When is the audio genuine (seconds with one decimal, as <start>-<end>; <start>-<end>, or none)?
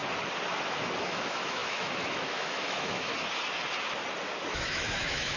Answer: 0.0-1.0; 3.1-4.5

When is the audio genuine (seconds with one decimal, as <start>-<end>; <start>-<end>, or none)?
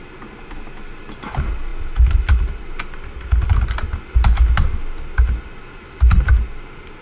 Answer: 0.0-7.0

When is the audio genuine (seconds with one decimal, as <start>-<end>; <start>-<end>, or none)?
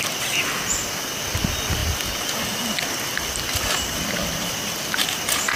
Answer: 0.0-5.6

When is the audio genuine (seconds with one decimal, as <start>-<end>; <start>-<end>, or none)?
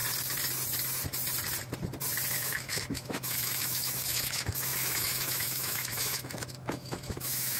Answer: 0.0-2.3